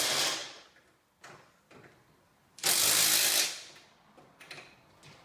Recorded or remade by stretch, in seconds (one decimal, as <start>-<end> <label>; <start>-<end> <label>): 0.0-5.2 recorded